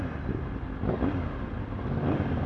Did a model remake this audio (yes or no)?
no